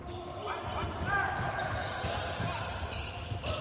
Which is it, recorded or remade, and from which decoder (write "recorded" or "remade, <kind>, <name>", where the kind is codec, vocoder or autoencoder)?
recorded